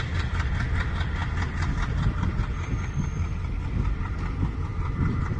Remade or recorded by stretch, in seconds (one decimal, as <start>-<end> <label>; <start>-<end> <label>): 0.0-5.4 recorded